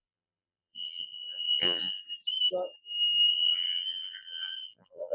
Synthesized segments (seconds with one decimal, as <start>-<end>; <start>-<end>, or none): 0.0-2.0; 3.3-5.1